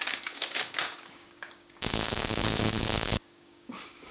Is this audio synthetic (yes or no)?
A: yes